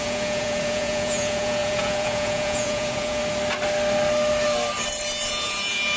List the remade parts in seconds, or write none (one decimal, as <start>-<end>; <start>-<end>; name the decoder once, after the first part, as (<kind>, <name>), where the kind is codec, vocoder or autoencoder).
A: 0.0-3.2 (vocoder, Vocos); 5.3-6.0

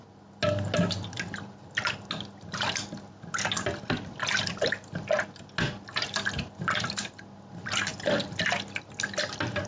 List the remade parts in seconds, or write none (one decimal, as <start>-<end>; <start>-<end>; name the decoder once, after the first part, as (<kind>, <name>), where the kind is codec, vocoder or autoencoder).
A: none

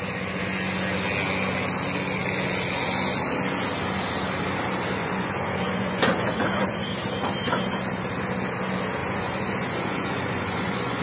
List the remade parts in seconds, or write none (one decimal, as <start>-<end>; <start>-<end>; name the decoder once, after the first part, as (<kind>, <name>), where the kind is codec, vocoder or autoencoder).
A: 5.0-6.9 (vocoder, Vocos); 9.0-11.0

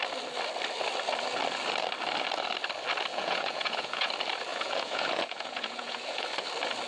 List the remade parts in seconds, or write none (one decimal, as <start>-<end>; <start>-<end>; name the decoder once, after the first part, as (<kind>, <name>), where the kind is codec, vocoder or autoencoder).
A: 3.1-4.1 (vocoder, Vocos); 4.5-6.3

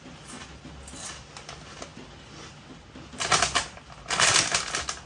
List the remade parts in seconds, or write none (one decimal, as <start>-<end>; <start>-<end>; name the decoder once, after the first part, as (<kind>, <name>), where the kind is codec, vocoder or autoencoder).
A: none